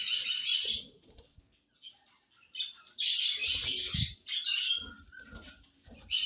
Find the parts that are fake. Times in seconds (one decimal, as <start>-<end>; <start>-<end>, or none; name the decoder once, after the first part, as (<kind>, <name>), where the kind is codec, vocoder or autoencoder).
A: 0.5-1.4 (vocoder, Vocos)

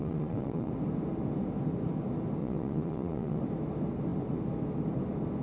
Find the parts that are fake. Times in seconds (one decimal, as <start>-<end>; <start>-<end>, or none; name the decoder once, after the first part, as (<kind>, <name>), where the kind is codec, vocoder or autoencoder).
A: 0.0-0.7 (vocoder, Vocos); 2.4-3.4